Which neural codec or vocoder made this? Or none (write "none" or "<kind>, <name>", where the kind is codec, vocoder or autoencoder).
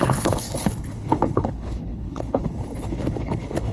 codec, HILCodec